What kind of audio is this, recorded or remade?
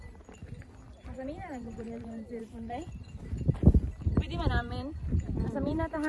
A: remade